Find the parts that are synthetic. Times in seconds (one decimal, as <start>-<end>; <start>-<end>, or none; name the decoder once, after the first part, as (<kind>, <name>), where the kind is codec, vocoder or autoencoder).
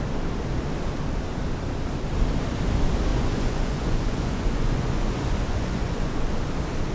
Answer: 3.1-6.3 (vocoder, Vocos)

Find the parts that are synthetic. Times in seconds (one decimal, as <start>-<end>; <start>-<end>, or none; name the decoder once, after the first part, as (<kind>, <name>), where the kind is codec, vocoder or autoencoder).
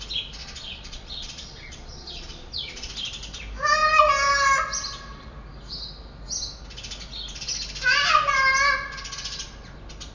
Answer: 0.4-2.9 (vocoder, Vocos)